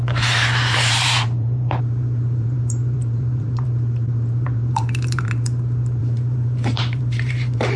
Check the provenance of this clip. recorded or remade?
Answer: remade